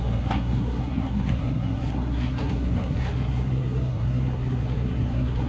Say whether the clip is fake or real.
fake